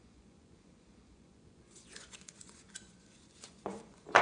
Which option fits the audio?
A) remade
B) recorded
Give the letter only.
A